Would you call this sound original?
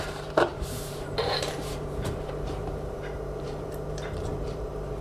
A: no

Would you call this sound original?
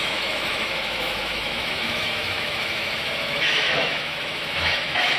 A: no